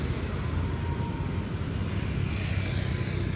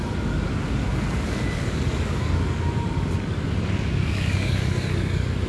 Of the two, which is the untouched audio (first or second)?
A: first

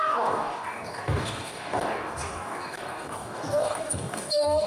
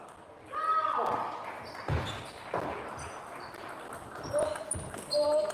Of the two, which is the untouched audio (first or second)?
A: second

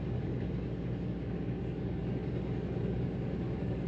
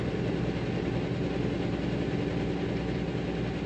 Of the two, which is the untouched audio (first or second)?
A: second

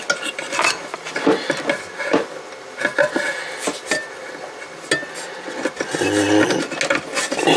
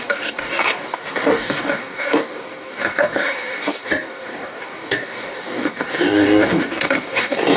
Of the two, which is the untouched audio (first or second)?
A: first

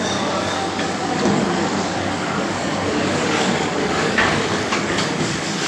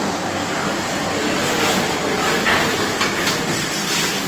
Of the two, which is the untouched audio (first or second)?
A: second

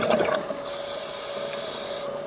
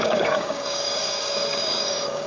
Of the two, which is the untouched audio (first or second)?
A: first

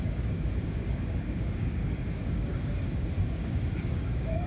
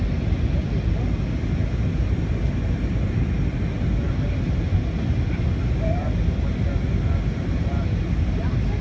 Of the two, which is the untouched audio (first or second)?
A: second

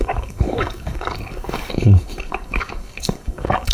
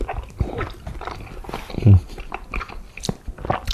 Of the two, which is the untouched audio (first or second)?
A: second